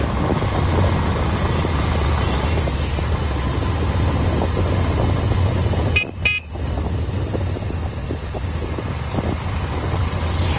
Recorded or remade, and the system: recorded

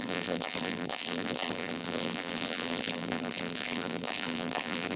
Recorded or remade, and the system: remade, vocoder, BigVGAN v2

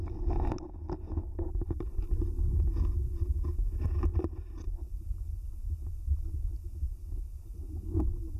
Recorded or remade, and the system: recorded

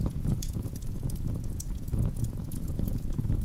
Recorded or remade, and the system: remade, vocoder, Vocos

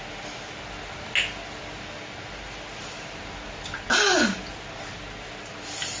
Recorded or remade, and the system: recorded